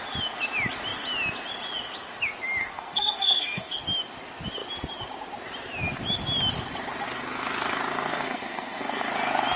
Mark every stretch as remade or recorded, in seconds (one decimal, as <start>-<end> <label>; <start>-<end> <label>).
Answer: 0.0-2.6 recorded; 2.6-3.8 remade; 3.8-8.1 recorded; 8.1-9.1 remade; 9.1-9.6 recorded